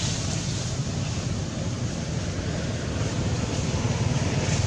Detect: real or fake real